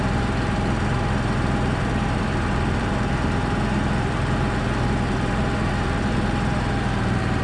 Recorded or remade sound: remade